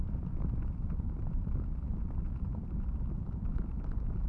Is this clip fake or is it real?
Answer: real